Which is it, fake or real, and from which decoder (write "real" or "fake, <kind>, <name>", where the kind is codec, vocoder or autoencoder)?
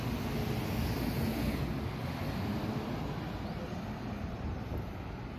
real